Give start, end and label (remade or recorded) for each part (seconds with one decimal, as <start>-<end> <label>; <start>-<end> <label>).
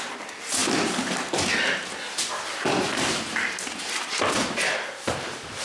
0.0-5.6 recorded